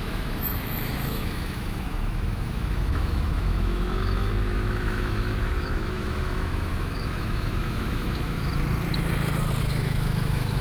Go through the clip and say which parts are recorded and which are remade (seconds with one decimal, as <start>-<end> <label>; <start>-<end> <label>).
0.0-8.5 remade; 8.5-9.6 recorded; 9.6-10.6 remade